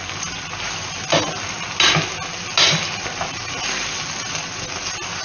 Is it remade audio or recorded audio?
recorded